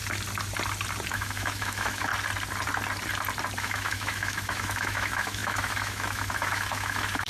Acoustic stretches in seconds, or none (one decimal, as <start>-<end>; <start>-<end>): 0.0-1.1; 2.1-3.6